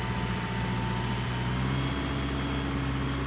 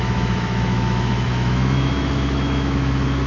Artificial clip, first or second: second